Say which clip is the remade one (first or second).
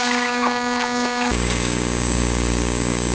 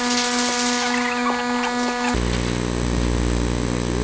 first